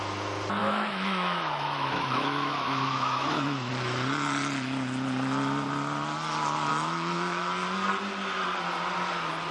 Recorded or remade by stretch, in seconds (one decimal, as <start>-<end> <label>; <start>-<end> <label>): 0.0-0.6 recorded; 0.6-3.7 remade; 3.7-6.7 recorded; 6.7-7.5 remade; 7.5-9.5 recorded